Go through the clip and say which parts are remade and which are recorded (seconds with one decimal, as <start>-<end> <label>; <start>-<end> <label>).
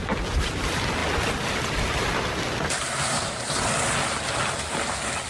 0.0-5.3 recorded